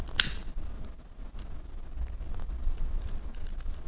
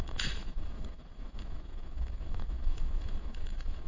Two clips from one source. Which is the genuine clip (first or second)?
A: first